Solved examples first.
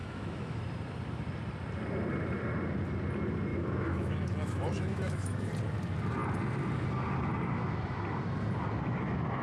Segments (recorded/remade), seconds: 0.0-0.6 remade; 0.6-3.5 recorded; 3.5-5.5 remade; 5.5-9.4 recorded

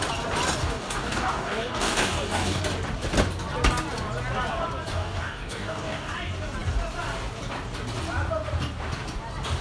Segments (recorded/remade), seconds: 0.0-0.6 recorded; 0.6-2.6 remade; 2.6-4.9 recorded; 4.9-6.1 remade; 6.1-9.6 recorded